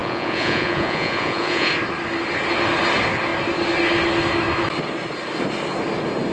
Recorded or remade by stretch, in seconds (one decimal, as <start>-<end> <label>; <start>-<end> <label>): 0.0-1.7 remade; 1.7-6.3 recorded